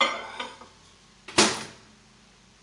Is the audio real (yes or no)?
yes